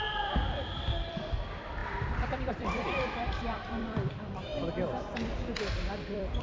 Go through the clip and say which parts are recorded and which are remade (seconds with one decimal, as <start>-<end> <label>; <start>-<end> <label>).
0.0-4.5 remade; 4.5-5.6 recorded; 5.6-6.4 remade